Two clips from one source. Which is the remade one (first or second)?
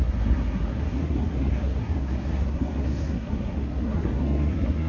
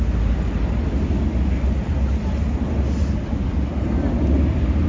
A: first